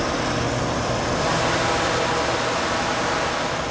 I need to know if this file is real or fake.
real